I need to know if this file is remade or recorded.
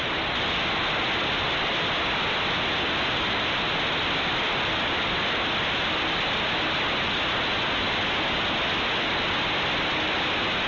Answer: recorded